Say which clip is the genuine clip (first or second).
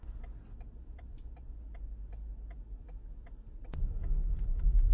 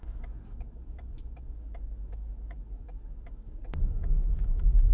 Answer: first